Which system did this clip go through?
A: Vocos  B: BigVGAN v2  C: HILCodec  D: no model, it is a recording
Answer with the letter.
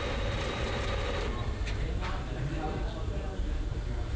B